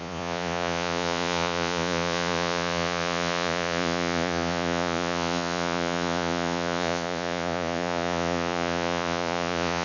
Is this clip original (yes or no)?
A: no